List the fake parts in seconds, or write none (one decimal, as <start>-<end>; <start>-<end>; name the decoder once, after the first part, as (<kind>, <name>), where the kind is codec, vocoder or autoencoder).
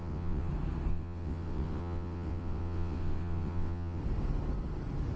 0.0-0.5 (vocoder, WaveNeXt); 0.9-4.0